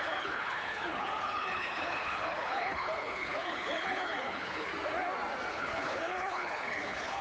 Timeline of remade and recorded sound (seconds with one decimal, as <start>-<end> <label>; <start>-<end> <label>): 0.0-4.7 remade; 4.7-5.5 recorded; 5.5-7.2 remade